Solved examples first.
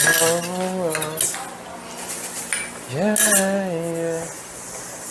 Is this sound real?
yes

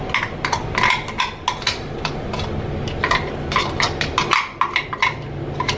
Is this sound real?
yes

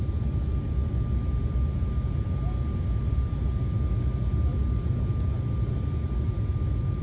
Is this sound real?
yes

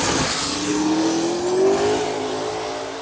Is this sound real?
yes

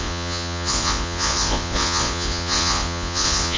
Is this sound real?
no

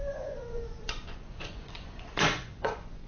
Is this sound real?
no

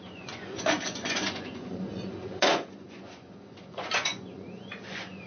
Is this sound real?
no